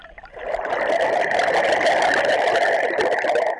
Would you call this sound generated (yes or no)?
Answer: no